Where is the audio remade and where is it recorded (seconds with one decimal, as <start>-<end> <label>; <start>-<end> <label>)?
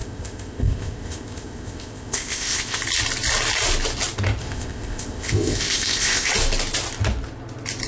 0.0-2.8 remade; 2.8-4.4 recorded; 4.4-6.3 remade; 6.3-7.9 recorded